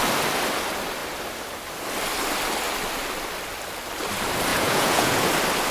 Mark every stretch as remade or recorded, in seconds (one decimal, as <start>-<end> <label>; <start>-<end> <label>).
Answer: 0.0-4.5 recorded; 4.5-5.3 remade; 5.3-5.7 recorded